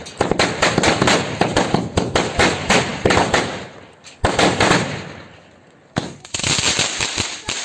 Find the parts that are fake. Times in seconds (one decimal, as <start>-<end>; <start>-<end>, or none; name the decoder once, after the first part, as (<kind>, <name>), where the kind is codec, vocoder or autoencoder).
none